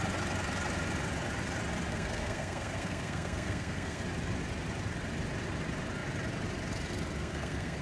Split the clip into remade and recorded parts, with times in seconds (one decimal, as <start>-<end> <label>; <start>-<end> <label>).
0.0-1.9 recorded; 1.9-4.0 remade; 4.0-7.2 recorded; 7.2-7.8 remade